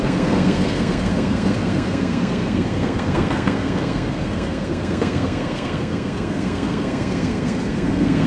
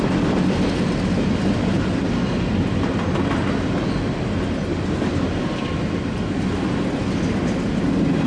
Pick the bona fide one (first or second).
second